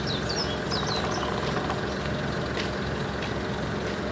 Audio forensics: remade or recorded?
recorded